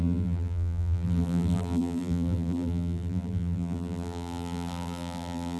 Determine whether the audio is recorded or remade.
remade